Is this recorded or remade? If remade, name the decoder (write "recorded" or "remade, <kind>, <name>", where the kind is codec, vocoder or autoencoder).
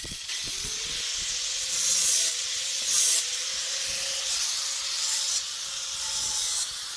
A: remade, vocoder, Vocos